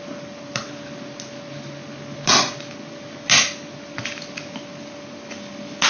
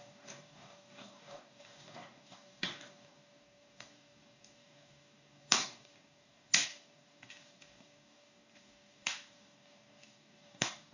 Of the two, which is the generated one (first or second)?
second